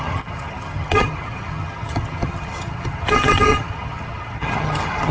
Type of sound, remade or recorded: remade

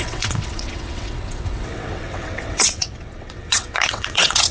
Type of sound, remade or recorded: remade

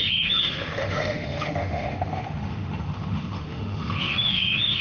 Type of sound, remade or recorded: remade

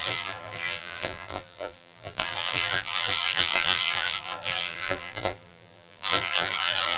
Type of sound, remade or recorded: remade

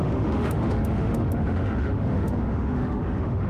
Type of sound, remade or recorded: remade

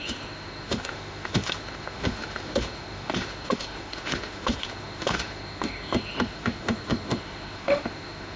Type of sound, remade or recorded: remade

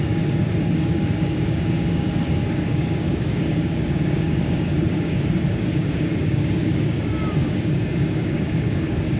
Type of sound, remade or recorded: remade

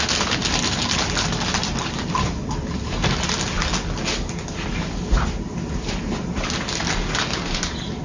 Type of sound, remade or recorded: recorded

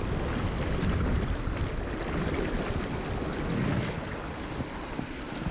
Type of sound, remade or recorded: recorded